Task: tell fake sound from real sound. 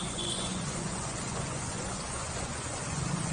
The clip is fake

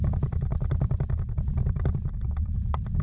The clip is real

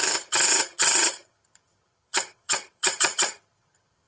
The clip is fake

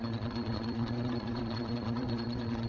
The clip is fake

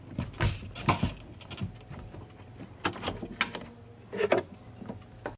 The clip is real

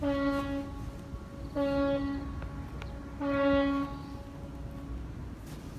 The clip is real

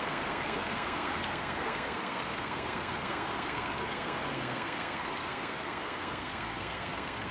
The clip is fake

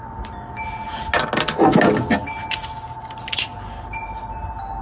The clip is real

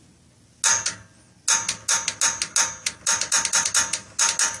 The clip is real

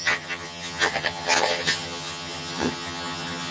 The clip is fake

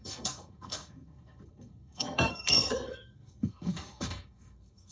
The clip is fake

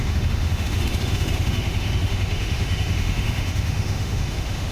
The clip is fake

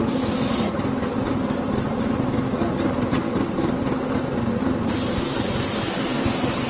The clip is real